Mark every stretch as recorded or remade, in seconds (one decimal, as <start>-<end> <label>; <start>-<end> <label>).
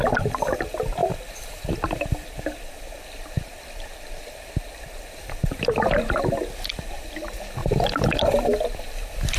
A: 0.0-1.0 recorded; 1.0-3.0 remade; 3.0-7.6 recorded; 7.6-8.2 remade; 8.2-9.4 recorded